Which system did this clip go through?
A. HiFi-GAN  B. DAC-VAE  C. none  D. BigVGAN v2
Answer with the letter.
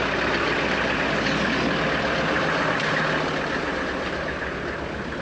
C